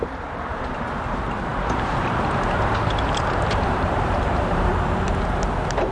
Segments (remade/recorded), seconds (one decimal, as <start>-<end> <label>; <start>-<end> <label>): 0.0-1.5 recorded; 1.5-4.7 remade; 4.7-5.9 recorded